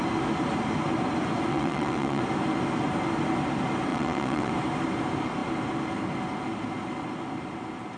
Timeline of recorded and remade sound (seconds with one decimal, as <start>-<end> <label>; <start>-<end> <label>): 0.0-1.5 recorded; 1.5-2.2 remade; 2.2-3.9 recorded; 3.9-4.5 remade; 4.5-8.0 recorded